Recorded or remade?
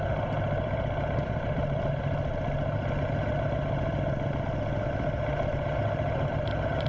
recorded